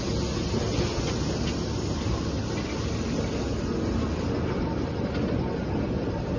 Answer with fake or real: real